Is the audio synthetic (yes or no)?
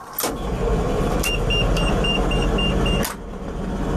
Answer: no